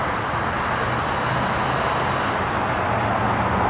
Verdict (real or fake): real